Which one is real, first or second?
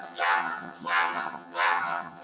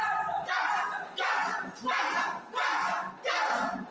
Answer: second